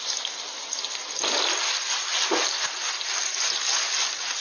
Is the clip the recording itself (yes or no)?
yes